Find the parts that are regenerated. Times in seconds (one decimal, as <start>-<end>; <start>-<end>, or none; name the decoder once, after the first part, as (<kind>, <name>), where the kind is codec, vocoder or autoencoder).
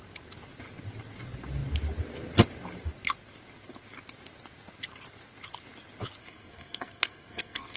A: 6.2-7.8 (codec, SNAC)